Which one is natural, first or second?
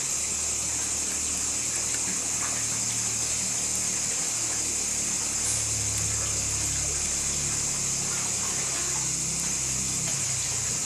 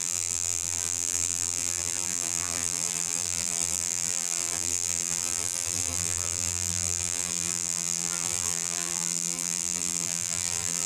first